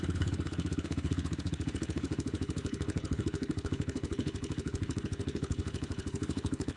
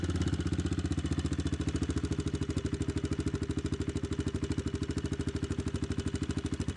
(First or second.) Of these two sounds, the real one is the second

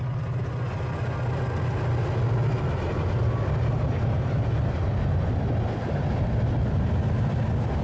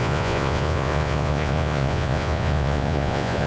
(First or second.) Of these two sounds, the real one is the first